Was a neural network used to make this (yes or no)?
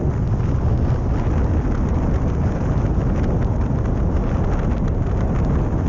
no